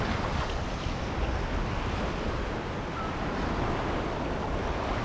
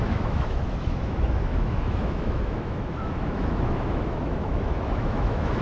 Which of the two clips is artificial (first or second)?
second